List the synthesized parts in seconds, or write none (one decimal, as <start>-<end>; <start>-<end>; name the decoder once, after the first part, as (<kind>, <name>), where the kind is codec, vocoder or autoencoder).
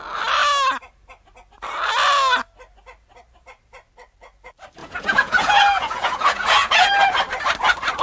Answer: 4.8-6.9 (vocoder, Vocos)